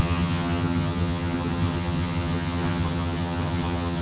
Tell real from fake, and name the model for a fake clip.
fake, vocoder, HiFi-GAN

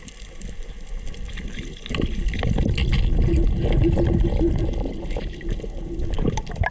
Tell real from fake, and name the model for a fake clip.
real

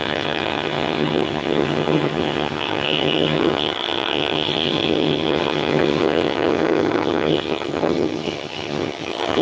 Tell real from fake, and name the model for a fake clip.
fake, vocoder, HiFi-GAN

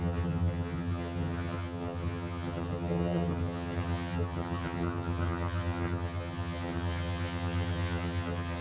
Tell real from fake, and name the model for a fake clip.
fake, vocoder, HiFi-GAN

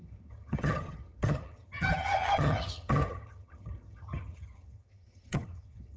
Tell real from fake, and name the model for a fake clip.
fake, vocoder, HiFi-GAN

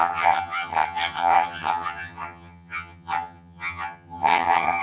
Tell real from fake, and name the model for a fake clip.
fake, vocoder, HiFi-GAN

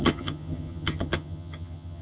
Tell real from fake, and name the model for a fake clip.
fake, vocoder, HiFi-GAN